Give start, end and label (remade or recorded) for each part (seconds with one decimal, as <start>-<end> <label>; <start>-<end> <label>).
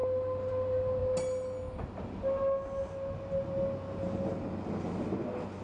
0.0-5.6 recorded